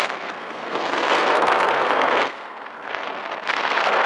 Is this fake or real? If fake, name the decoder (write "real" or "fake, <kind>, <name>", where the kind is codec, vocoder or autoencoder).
fake, codec, SNAC